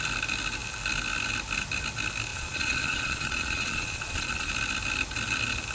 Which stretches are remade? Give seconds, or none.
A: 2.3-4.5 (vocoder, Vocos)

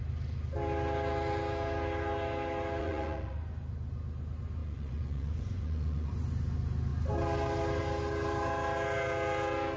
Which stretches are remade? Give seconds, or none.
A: 2.8-3.4 (vocoder, Vocos); 4.6-6.1

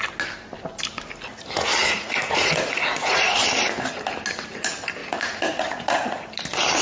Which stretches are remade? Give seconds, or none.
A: 1.8-3.4 (vocoder, Vocos); 5.0-6.3

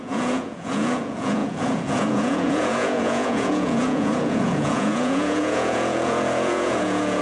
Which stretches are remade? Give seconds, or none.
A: 0.0-7.2 (vocoder, Vocos)

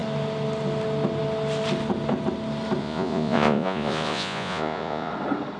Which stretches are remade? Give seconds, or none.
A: 2.8-5.1 (vocoder, Vocos)

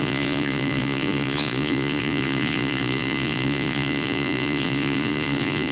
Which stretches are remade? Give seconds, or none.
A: 0.0-5.7 (vocoder, Vocos)

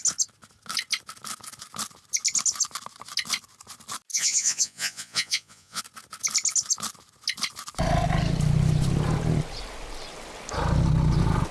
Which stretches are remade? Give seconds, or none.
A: 4.1-5.8 (vocoder, Vocos)

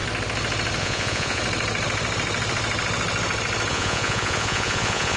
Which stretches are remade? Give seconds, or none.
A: 0.8-1.4 (vocoder, Vocos); 3.7-5.2